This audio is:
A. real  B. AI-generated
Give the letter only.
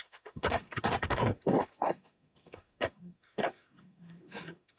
B